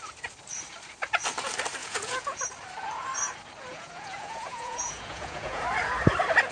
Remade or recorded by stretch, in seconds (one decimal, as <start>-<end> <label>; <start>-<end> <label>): 0.0-1.8 recorded; 1.8-2.4 remade; 2.4-3.7 recorded; 3.7-5.6 remade; 5.6-6.5 recorded